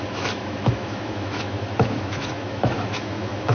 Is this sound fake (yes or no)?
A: yes